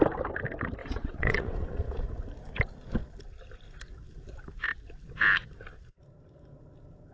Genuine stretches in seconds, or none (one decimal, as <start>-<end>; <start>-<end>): 0.0-0.8; 2.0-7.1